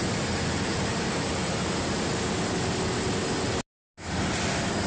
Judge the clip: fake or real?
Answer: real